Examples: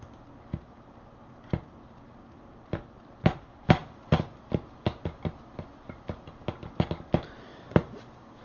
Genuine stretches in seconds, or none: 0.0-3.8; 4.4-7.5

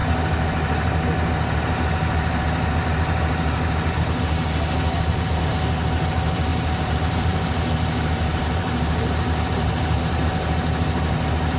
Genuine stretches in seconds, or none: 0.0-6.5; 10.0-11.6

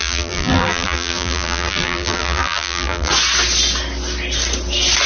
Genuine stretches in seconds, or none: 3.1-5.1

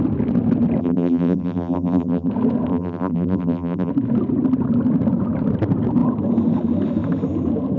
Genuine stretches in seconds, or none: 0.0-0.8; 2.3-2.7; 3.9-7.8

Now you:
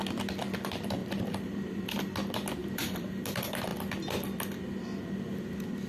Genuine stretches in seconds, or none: 0.0-1.0; 1.9-2.6; 3.2-5.9